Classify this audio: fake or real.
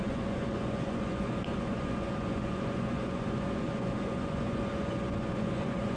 fake